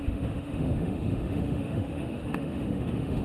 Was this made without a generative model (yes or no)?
no